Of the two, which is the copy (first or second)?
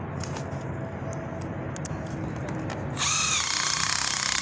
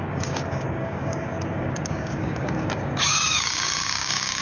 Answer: second